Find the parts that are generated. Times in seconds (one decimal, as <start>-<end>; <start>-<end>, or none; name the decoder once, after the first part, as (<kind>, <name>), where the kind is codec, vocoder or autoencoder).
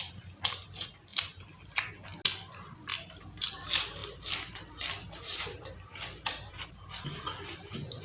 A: 2.9-3.5 (vocoder, BigVGAN v2); 4.0-7.4